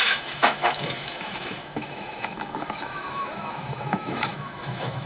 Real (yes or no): no